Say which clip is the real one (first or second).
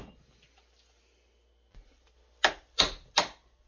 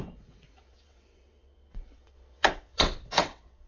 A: first